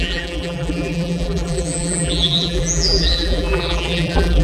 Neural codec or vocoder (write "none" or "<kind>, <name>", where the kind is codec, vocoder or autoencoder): vocoder, BigVGAN v2